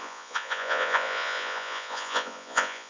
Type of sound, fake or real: fake